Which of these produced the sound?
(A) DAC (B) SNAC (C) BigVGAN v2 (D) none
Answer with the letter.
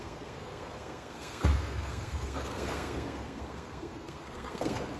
B